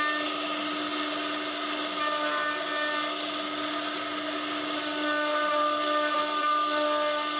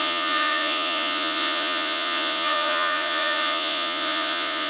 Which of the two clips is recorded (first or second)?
first